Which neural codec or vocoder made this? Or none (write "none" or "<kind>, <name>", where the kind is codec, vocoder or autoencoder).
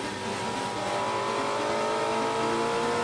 none